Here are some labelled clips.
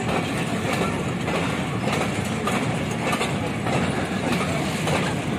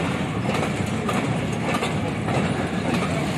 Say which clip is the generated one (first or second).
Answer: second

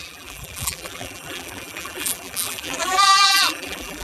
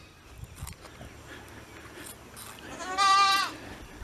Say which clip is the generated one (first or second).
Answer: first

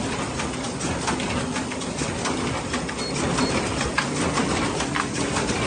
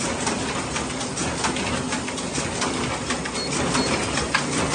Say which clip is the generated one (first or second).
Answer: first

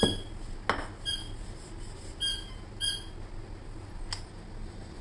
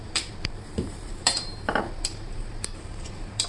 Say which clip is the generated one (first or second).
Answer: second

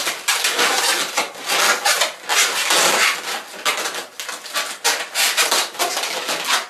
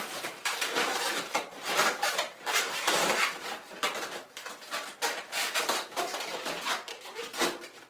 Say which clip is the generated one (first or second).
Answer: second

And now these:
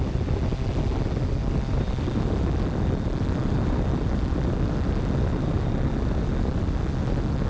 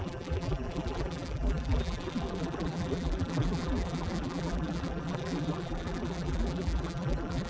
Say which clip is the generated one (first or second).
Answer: second